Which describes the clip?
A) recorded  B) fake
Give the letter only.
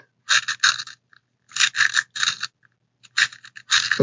A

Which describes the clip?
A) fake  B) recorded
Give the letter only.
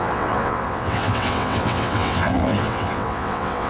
A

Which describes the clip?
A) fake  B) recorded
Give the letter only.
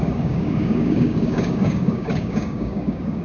A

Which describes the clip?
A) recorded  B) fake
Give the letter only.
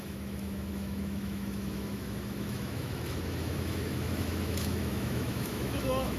B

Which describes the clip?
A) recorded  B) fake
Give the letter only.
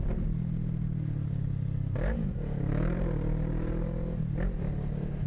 A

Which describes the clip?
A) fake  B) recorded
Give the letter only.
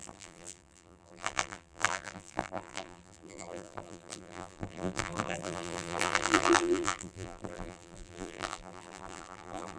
A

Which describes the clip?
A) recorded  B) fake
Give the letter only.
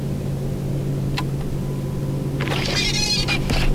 A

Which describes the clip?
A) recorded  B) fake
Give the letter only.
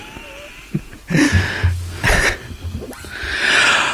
A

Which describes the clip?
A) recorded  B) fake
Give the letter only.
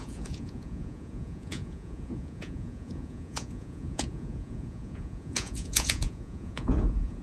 B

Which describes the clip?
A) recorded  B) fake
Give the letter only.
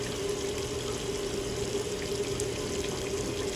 A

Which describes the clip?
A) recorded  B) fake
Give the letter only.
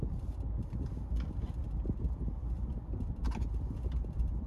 A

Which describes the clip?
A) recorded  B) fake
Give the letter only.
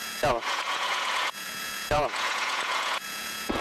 B